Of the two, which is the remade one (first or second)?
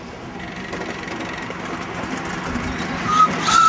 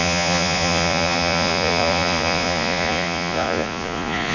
second